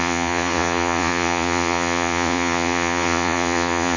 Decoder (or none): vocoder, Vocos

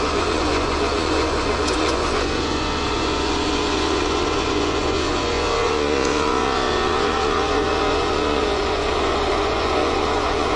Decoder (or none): vocoder, Vocos